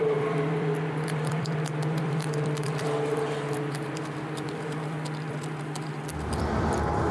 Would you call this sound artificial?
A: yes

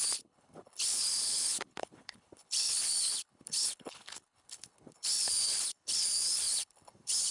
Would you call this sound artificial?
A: yes